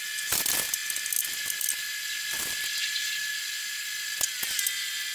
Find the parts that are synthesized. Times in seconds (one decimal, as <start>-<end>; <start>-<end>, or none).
none